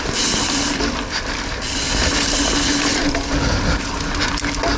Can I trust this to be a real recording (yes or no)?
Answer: yes